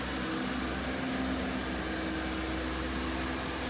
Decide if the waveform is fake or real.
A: real